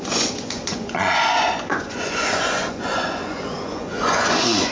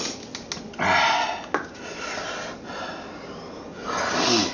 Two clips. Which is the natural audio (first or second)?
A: second